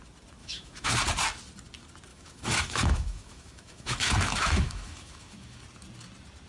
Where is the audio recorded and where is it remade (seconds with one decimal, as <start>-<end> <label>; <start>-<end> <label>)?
0.0-0.4 recorded; 0.4-0.9 remade; 0.9-2.1 recorded; 2.1-5.6 remade; 5.6-6.5 recorded